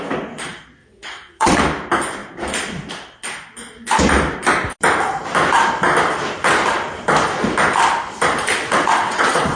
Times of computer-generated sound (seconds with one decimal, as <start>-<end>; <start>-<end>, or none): 0.8-1.6; 8.6-9.6